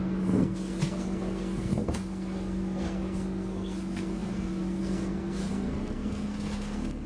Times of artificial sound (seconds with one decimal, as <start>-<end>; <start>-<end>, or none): 0.0-7.1